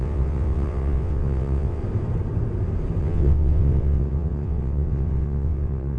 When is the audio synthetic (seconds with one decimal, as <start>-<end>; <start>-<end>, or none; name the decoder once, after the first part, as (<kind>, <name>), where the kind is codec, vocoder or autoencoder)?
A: 0.0-1.8 (vocoder, WaveNeXt); 3.0-6.0